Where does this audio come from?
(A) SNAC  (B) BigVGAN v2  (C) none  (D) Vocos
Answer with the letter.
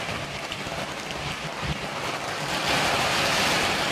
C